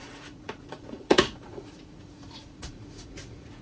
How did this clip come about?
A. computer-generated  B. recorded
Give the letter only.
A